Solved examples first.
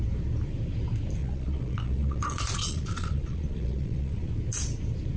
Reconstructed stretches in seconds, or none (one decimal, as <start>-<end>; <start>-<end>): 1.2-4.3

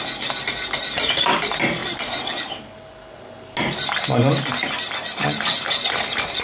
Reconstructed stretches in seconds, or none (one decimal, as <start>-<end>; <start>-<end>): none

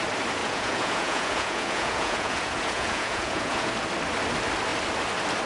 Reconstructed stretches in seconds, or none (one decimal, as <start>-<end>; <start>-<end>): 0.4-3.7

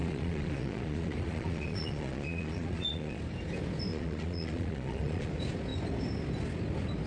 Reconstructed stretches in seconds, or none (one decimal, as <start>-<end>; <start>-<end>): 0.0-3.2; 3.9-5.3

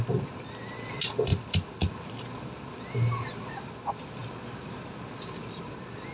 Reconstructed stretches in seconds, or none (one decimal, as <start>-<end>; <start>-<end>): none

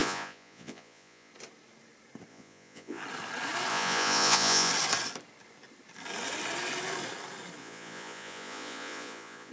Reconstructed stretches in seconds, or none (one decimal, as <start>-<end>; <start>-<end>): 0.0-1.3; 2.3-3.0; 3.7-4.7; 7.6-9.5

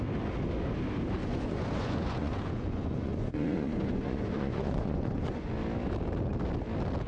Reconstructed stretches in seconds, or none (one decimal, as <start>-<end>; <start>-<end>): 1.2-5.5

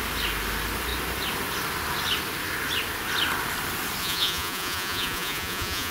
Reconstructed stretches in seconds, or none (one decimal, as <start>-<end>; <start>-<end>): 4.0-5.9